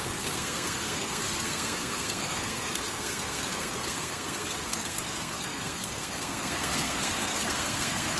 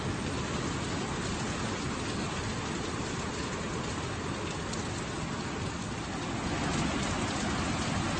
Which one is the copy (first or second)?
first